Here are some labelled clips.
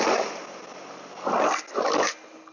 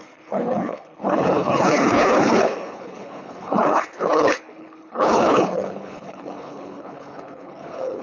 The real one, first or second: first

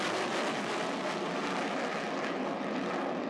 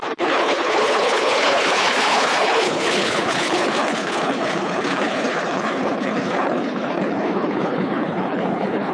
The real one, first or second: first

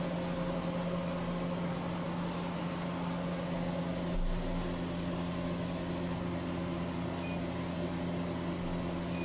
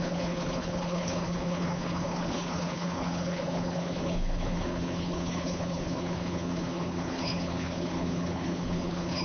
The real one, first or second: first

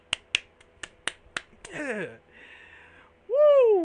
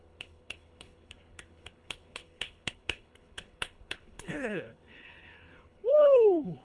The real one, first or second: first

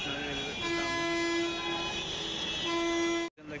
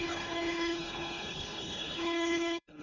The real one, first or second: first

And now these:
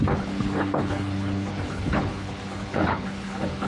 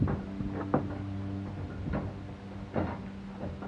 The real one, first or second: second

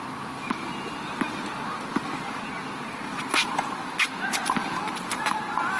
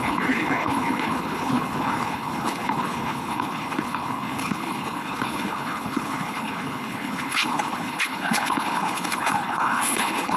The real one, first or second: first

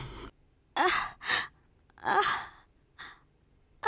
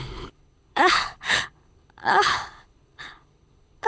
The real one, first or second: first